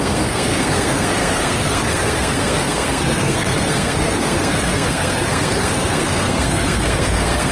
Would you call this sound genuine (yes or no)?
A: no